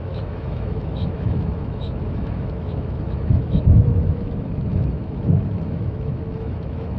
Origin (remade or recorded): remade